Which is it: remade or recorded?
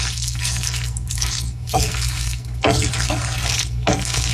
remade